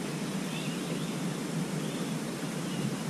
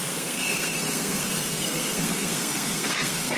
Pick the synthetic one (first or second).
second